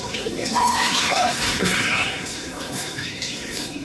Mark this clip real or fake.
fake